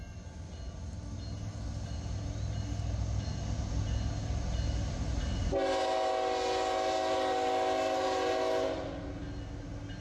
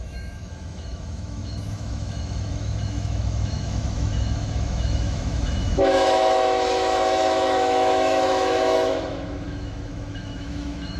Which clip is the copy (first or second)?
second